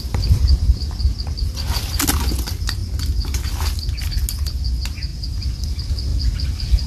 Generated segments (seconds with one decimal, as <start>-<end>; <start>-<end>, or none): none